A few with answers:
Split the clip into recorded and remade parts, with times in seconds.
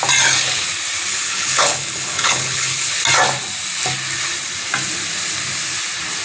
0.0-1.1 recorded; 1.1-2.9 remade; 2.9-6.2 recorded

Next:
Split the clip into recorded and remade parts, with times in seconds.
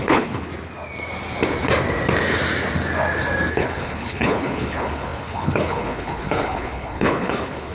0.0-0.5 remade; 0.5-3.5 recorded; 3.5-7.7 remade